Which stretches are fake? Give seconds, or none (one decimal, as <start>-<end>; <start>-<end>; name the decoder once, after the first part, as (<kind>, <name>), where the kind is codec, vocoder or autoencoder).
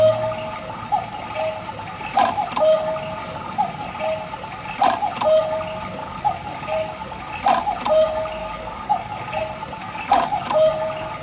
3.2-3.9 (codec, DAC); 6.0-7.3; 8.4-9.4; 9.8-10.5